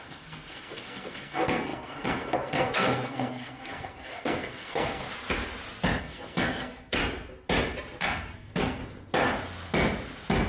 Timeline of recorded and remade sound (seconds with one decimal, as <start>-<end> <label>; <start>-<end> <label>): 0.0-5.0 remade; 5.0-6.0 recorded; 6.0-7.0 remade; 7.0-8.0 recorded; 8.0-8.8 remade; 8.8-10.5 recorded